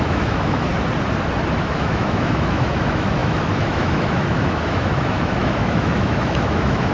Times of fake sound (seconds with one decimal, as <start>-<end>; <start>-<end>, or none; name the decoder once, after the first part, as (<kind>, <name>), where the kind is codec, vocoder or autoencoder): 0.0-0.7 (autoencoder, DAC-VAE); 1.6-6.9